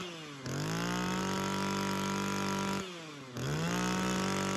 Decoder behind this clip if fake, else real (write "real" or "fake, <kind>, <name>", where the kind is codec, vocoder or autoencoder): real